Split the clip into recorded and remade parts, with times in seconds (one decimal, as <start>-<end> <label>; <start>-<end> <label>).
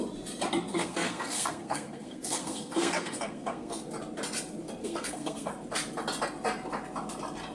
0.0-0.7 recorded; 0.7-3.8 remade; 3.8-4.8 recorded; 4.8-5.5 remade; 5.5-7.5 recorded